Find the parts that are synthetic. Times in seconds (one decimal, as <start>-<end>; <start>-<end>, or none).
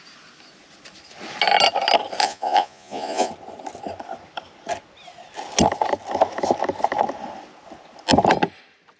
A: 2.2-3.3